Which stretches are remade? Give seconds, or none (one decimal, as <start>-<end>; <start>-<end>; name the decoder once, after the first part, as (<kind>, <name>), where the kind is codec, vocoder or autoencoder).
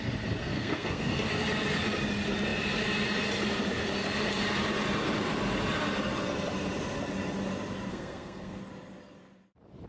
0.4-1.3 (codec, SNAC); 7.9-8.6